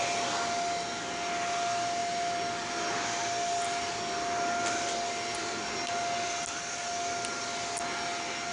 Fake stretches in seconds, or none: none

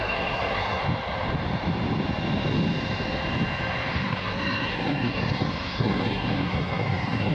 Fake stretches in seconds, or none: 0.0-0.8 (codec, SNAC); 3.9-7.3

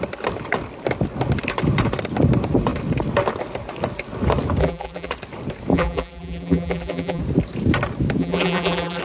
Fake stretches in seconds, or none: 4.6-5.1 (vocoder, BigVGAN v2); 5.7-7.2; 8.2-9.0

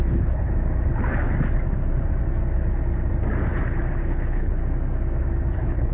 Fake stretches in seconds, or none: 0.0-0.5 (codec, HILCodec); 4.0-4.6; 5.5-5.9